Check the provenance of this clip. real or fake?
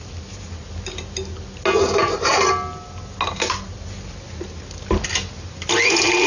real